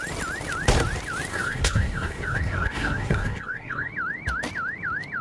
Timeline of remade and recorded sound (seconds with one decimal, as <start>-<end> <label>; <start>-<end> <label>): 0.0-1.3 recorded; 1.3-3.9 remade; 3.9-5.2 recorded